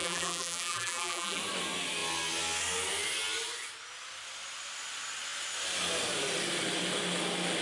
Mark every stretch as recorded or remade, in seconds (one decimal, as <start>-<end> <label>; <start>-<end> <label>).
0.0-1.4 remade; 1.4-7.6 recorded